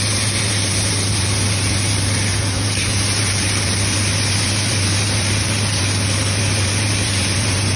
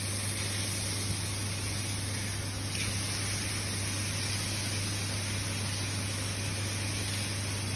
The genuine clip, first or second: second